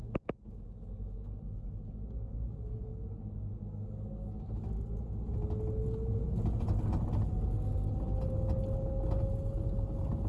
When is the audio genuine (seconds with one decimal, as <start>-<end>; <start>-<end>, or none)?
0.0-10.3